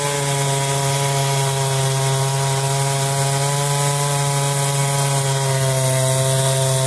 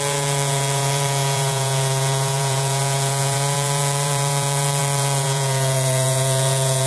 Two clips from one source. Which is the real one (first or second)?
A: first